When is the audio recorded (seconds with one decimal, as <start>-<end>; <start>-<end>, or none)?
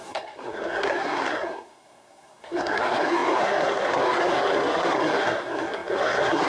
none